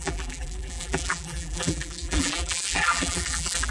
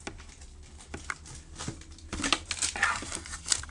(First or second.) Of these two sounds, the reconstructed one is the first